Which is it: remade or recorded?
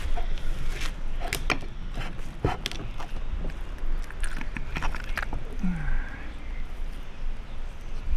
recorded